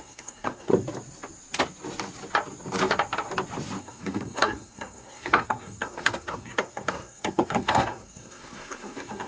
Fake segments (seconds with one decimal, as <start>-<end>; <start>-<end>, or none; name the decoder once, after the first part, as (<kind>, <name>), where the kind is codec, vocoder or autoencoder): 0.0-0.7 (codec, SNAC); 3.8-9.3